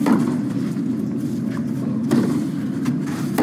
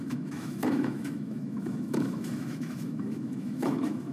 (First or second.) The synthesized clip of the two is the second